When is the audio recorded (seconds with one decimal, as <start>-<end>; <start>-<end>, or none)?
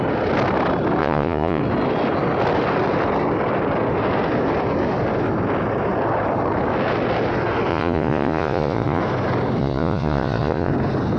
0.0-1.0; 1.6-7.7; 9.0-9.6; 10.7-11.2